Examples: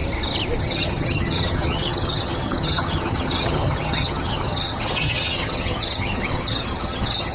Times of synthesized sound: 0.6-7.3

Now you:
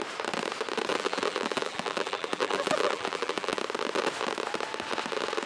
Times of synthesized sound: 0.9-3.6

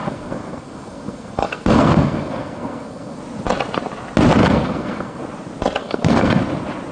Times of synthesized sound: 0.0-3.2; 4.4-5.2; 5.8-6.4